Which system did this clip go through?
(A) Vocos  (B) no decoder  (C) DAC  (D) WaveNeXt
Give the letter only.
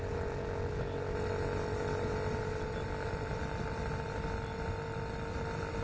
B